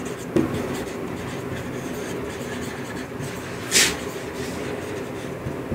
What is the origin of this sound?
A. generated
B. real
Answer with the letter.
B